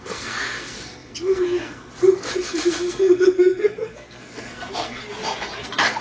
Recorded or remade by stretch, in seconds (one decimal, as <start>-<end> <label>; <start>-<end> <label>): 0.0-5.0 remade; 5.0-5.6 recorded; 5.6-6.0 remade